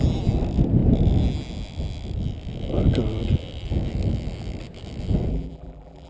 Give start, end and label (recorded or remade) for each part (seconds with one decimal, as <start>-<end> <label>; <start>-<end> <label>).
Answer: 0.0-5.3 recorded; 5.3-6.1 remade